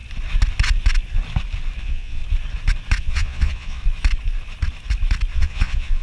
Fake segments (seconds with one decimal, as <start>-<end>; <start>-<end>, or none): 1.8-2.2; 3.0-3.8; 5.3-6.0